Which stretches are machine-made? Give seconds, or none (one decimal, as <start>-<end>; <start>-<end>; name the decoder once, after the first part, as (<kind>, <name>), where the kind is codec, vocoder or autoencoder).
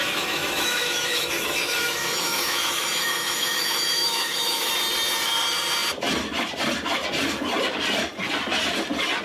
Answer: 0.0-4.7 (autoencoder, DAC-VAE)